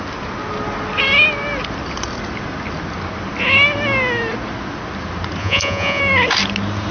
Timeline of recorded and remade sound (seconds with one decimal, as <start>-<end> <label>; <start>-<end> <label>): 0.0-5.4 recorded; 5.4-6.0 remade; 6.0-6.9 recorded